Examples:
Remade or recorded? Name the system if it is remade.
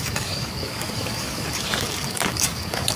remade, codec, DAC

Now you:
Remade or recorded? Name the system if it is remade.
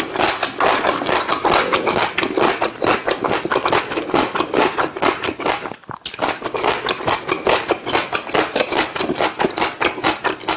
recorded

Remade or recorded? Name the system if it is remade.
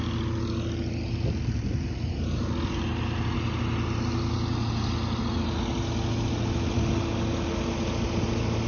recorded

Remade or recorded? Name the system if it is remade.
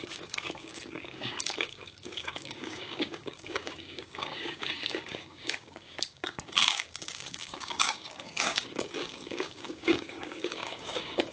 remade, codec, DAC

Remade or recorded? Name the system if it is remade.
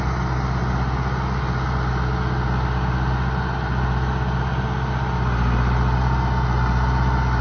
recorded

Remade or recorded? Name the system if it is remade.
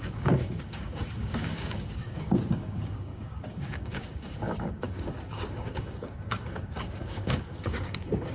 remade, codec, DAC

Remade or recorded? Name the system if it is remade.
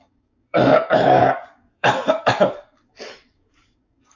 remade, codec, DAC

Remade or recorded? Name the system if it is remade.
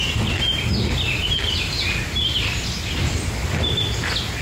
recorded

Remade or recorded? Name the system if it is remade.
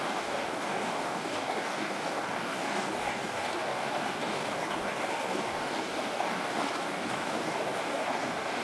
remade, codec, DAC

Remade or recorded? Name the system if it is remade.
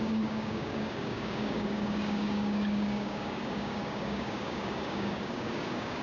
remade, codec, DAC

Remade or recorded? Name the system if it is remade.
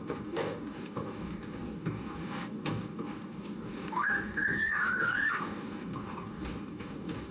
remade, codec, DAC